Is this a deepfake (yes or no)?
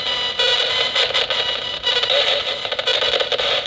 no